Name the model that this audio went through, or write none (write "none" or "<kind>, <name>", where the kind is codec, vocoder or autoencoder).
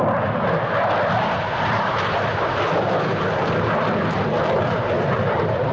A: none